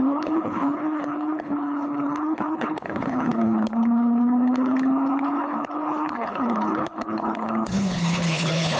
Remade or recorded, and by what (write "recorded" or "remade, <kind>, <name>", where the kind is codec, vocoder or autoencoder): remade, codec, HILCodec